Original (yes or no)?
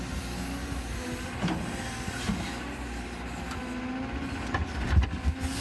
yes